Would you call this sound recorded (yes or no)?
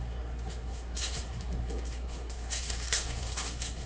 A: no